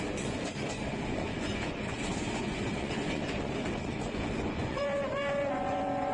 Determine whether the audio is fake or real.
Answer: fake